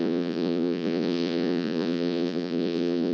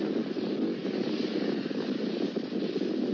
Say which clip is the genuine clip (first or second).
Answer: second